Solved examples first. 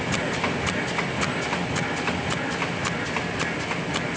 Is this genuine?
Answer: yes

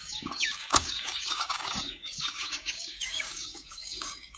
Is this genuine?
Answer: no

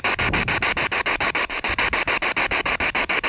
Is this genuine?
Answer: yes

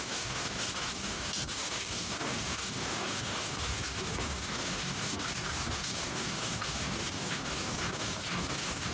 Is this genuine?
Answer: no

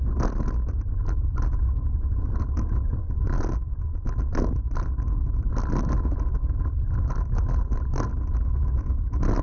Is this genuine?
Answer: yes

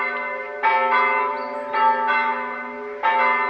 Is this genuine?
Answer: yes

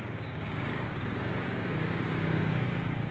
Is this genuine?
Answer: no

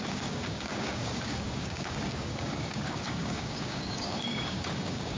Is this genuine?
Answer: no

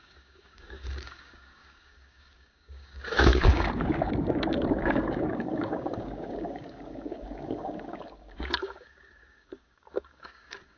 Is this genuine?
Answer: no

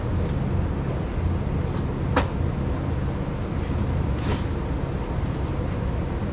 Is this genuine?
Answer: yes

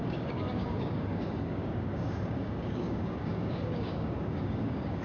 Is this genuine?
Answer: no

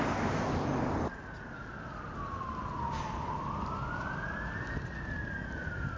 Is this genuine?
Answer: yes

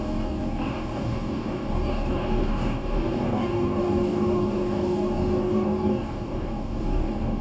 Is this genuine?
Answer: no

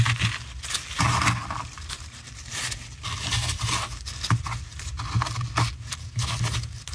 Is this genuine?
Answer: yes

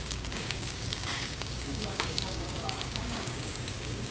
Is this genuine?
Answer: no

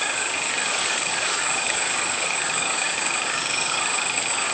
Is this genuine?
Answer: no